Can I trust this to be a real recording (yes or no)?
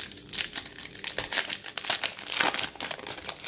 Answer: yes